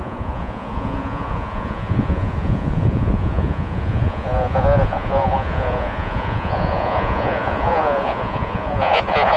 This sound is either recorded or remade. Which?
remade